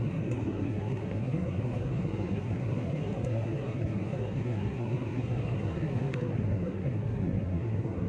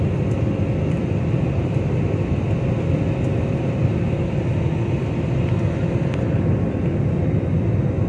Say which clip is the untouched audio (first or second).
second